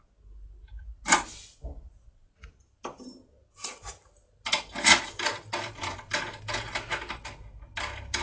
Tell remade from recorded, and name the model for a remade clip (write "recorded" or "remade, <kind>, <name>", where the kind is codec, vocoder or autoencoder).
recorded